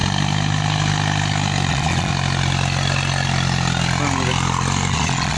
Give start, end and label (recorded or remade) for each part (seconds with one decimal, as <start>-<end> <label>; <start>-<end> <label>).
0.0-1.7 recorded; 1.7-2.1 remade; 2.1-4.9 recorded; 4.9-5.4 remade